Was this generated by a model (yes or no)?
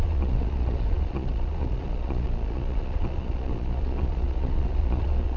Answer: yes